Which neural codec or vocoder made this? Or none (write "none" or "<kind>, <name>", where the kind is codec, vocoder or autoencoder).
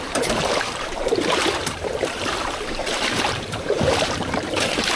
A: vocoder, BigVGAN v2